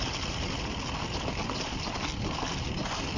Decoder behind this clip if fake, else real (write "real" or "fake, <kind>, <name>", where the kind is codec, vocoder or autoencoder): real